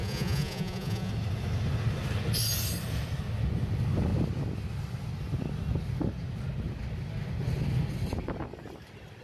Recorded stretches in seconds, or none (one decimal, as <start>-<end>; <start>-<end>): 1.1-9.2

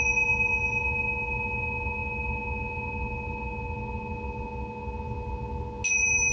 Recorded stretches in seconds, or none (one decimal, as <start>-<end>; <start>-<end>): 0.0-6.3

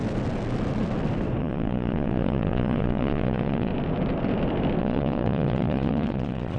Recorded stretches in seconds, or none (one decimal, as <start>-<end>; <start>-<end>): 0.0-1.4; 3.7-4.8